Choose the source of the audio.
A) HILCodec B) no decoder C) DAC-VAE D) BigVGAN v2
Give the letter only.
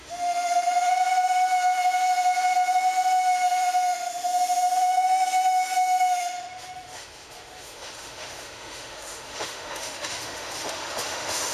C